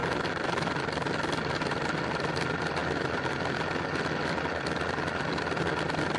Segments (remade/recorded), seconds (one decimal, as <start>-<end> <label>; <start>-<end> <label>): 0.0-6.2 recorded